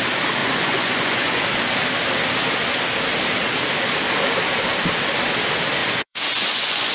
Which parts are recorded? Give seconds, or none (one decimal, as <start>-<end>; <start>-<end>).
0.0-0.4; 1.4-5.8